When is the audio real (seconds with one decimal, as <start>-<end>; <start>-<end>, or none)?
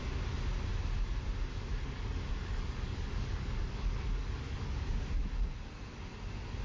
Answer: 0.0-1.5; 5.5-6.6